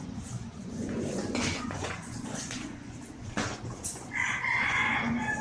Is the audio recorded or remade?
remade